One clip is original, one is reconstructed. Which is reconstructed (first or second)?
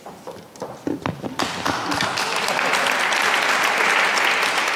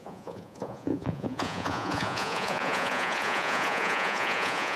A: second